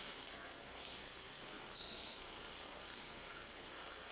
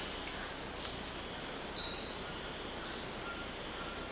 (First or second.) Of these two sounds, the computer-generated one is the first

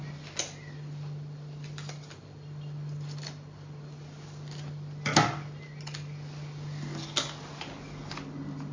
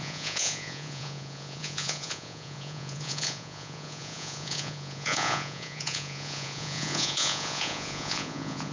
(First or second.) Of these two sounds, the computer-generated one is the second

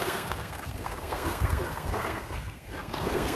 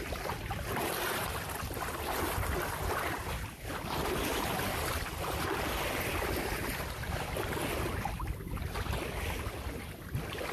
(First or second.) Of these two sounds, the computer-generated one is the first